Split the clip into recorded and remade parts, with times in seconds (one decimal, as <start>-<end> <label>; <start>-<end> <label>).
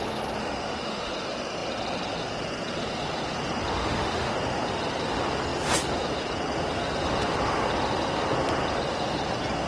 0.0-0.4 recorded; 0.4-1.1 remade; 1.1-3.8 recorded; 3.8-4.3 remade; 4.3-9.7 recorded